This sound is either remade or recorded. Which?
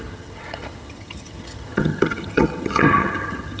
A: remade